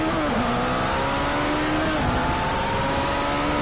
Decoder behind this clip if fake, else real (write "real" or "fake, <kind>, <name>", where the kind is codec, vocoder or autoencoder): real